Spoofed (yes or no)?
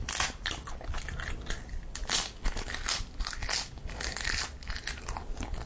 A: no